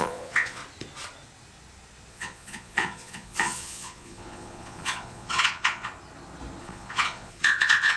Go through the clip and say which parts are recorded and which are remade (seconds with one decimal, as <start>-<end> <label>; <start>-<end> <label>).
0.0-0.6 remade; 0.6-2.1 recorded; 2.1-5.9 remade; 5.9-6.6 recorded; 6.6-8.0 remade

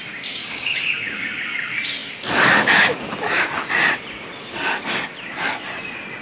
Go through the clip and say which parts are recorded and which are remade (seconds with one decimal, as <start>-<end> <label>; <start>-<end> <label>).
0.0-0.4 recorded; 0.4-1.4 remade; 1.4-6.2 recorded

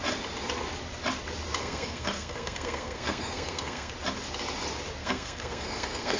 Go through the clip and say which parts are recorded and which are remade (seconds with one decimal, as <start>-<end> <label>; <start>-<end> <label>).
0.0-1.6 recorded; 1.6-3.9 remade; 3.9-5.0 recorded; 5.0-6.2 remade

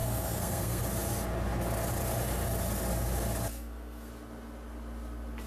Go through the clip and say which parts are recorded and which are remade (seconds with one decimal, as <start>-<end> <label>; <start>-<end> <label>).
0.0-0.8 remade; 0.8-3.5 recorded; 3.5-4.1 remade; 4.1-5.5 recorded